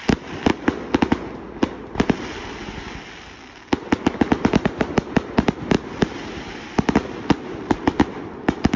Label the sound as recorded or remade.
recorded